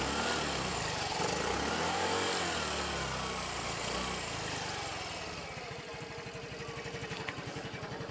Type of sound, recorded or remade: recorded